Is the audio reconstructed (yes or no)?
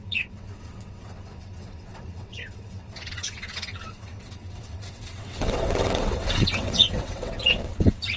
yes